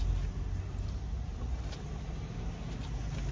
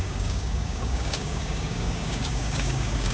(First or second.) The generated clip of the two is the second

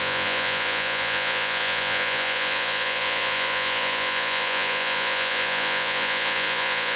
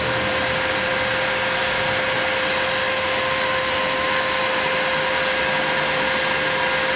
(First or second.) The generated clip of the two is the first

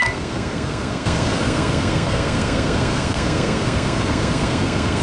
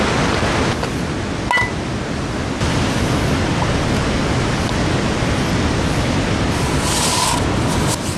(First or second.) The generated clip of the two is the first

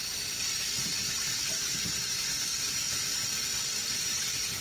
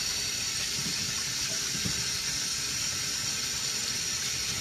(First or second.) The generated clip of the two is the second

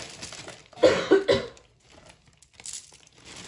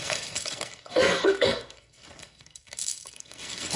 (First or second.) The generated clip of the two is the second